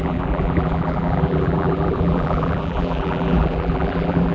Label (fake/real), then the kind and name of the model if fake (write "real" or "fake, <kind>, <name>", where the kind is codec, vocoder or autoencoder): fake, vocoder, BigVGAN v2